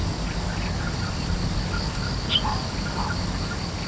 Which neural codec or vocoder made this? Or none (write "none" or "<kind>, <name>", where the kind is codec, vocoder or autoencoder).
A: none